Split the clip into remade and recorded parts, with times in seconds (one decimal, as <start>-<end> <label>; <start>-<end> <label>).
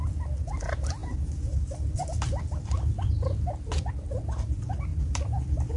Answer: 0.0-1.0 recorded; 1.0-3.9 remade; 3.9-4.9 recorded; 4.9-5.8 remade